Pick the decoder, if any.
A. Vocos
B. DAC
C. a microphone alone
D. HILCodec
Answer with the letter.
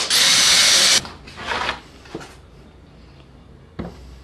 C